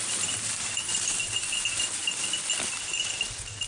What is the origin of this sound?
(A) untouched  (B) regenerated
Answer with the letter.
A